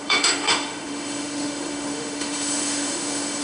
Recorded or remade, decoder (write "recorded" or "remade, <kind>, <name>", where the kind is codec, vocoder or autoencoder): remade, autoencoder, DAC-VAE